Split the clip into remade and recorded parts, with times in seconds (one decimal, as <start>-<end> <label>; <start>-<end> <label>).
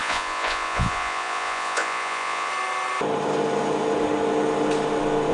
0.0-2.5 remade; 2.5-5.3 recorded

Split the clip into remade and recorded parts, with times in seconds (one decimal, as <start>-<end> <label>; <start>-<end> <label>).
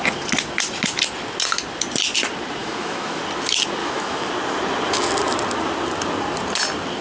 0.0-2.6 recorded; 2.6-3.2 remade; 3.2-3.8 recorded; 3.8-4.3 remade; 4.3-7.0 recorded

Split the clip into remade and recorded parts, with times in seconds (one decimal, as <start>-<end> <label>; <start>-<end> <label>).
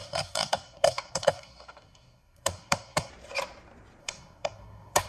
0.0-3.1 remade; 3.1-4.0 recorded; 4.0-5.1 remade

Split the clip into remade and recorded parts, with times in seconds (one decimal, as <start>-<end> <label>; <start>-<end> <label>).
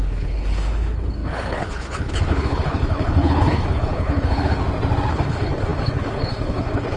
0.0-4.6 remade; 4.6-5.1 recorded; 5.1-7.0 remade